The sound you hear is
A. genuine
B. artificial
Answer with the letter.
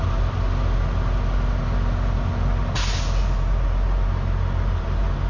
A